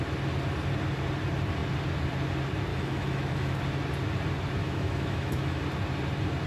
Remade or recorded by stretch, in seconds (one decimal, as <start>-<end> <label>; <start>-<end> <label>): 0.0-2.7 recorded; 2.7-3.6 remade; 3.6-4.6 recorded; 4.6-5.6 remade; 5.6-6.5 recorded